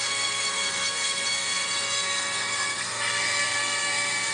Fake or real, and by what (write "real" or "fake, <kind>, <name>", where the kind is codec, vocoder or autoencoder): fake, codec, SNAC